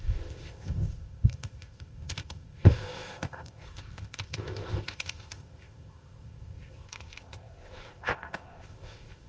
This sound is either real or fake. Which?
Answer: fake